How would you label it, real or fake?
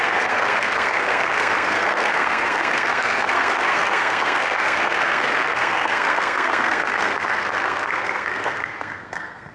fake